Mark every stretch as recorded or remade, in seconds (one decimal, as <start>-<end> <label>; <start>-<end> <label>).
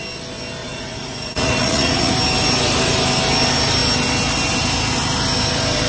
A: 0.0-0.6 recorded; 0.6-2.1 remade; 2.1-5.9 recorded